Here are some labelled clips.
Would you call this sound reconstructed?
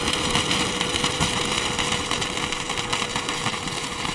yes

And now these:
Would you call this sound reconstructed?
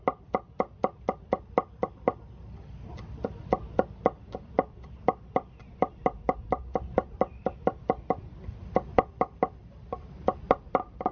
no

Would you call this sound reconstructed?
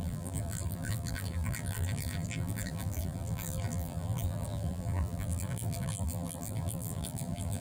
yes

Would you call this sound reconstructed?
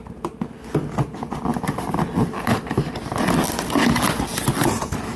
no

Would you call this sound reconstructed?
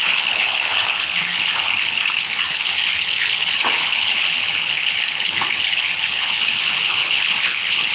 yes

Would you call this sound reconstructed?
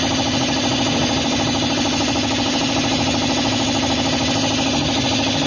no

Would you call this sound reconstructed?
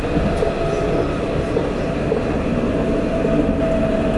no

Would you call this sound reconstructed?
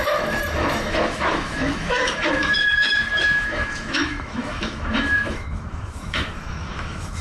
yes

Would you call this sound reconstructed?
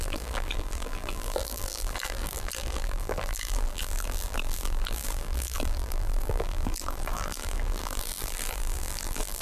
yes